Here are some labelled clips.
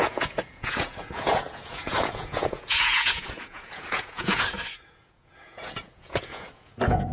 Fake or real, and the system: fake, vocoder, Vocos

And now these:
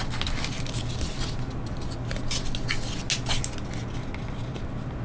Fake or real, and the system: real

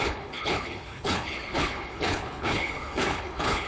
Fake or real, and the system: fake, codec, HILCodec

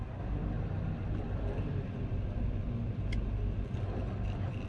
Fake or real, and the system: real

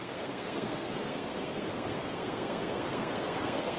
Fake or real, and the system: fake, codec, SNAC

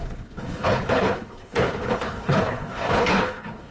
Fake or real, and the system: fake, codec, HILCodec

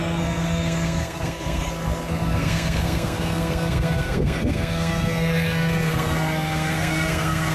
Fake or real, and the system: fake, codec, SNAC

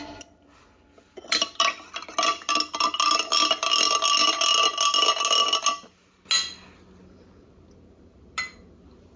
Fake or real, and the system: real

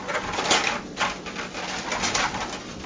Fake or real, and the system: real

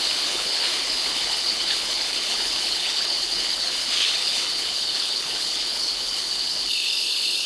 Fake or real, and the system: fake, codec, HILCodec